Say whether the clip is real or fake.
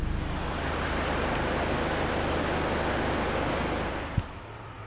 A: real